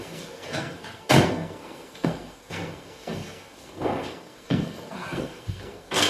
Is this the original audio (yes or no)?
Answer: no